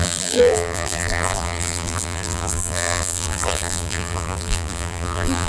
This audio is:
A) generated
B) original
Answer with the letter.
A